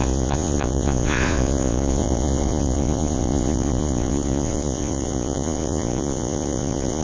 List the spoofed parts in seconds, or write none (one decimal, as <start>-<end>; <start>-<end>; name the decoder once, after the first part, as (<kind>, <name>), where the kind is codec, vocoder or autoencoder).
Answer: 0.0-7.0 (vocoder, Vocos)